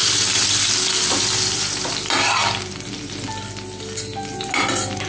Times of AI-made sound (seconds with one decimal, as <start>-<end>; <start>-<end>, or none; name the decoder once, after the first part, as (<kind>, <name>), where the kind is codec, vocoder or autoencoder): 0.0-3.1 (vocoder, BigVGAN v2)